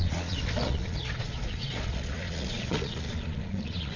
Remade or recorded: remade